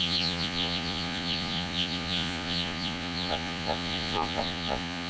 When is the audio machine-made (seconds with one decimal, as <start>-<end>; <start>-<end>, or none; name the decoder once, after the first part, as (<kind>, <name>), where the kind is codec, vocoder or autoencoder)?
0.0-5.1 (vocoder, Vocos)